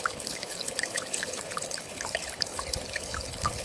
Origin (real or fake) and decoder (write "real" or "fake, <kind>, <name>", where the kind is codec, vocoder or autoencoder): fake, codec, HILCodec